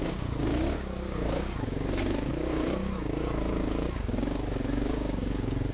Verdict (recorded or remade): remade